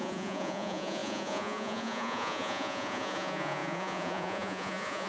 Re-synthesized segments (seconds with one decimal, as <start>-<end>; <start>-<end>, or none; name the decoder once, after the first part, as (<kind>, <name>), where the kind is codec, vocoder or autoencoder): 0.0-5.1 (vocoder, Vocos)